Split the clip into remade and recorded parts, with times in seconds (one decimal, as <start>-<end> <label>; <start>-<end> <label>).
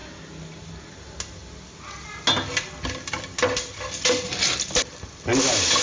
0.0-5.8 recorded